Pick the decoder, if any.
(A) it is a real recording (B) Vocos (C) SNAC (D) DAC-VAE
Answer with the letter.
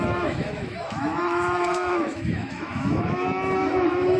D